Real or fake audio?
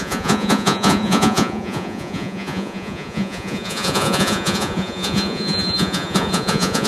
fake